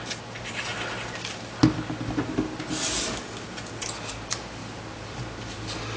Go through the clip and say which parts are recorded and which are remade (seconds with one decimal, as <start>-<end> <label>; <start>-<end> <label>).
0.0-6.0 recorded